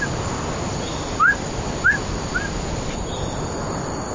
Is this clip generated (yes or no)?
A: no